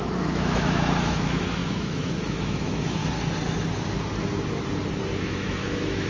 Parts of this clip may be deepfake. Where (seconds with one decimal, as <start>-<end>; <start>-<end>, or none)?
0.0-3.0; 5.2-6.1